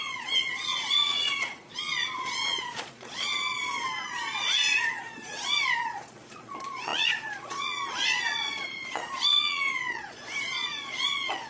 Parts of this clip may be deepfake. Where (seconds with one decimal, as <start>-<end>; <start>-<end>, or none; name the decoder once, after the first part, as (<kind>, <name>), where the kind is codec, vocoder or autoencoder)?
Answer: 0.0-11.5 (vocoder, Vocos)

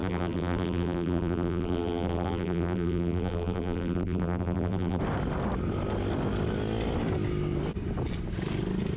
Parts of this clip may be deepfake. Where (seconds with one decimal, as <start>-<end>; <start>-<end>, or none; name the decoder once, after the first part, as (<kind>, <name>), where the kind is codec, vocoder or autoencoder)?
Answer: 0.0-5.0 (vocoder, BigVGAN v2)